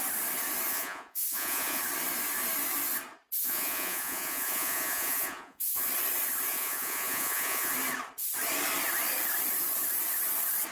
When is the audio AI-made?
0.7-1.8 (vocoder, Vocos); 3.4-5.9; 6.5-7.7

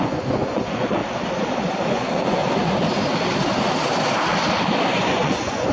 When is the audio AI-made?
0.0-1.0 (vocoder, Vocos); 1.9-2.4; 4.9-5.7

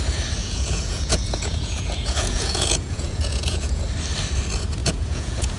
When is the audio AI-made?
0.4-3.8 (vocoder, Vocos); 4.8-5.6

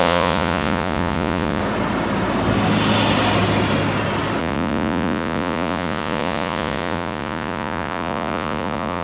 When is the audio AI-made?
0.0-1.6 (vocoder, Vocos); 4.4-9.0